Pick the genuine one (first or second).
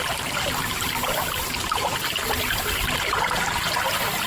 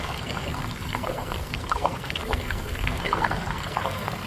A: first